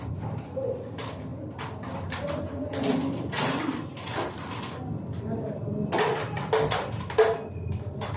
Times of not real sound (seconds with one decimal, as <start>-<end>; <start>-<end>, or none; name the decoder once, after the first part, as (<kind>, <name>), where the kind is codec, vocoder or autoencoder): none

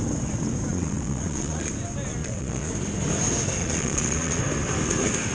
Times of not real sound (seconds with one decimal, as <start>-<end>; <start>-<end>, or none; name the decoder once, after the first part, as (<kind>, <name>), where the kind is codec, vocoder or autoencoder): 0.7-1.7 (vocoder, Vocos); 2.2-2.7; 3.6-4.4

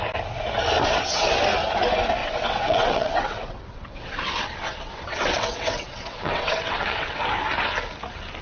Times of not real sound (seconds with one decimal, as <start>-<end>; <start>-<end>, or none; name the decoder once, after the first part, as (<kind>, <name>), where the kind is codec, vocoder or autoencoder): 0.8-1.3 (vocoder, WaveNeXt); 2.2-7.2

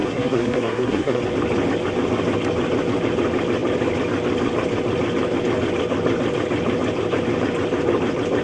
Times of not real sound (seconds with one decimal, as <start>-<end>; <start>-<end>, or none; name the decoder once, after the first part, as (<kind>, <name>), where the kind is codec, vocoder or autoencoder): 0.0-1.2 (codec, SNAC)